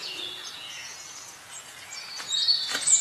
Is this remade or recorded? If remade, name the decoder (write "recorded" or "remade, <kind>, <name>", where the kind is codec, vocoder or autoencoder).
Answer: remade, vocoder, Vocos